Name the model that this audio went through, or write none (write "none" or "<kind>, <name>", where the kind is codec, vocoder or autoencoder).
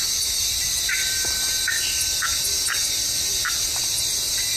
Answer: vocoder, BigVGAN v2